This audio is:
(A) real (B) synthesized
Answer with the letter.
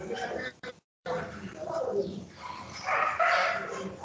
B